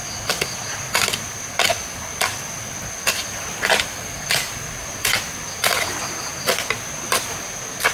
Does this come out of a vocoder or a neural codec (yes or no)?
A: no